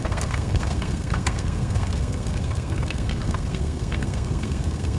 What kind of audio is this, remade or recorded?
remade